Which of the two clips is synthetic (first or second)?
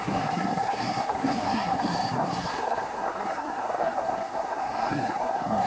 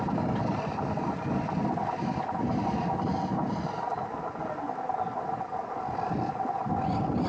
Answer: first